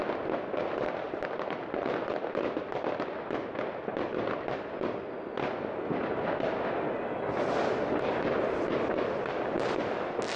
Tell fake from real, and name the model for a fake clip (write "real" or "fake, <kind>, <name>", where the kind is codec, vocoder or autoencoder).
real